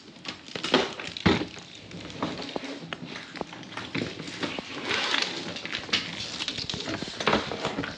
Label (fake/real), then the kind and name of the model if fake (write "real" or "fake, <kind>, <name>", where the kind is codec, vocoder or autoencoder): real